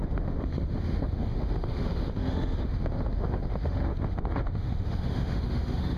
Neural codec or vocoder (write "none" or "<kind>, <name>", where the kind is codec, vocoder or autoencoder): autoencoder, DAC-VAE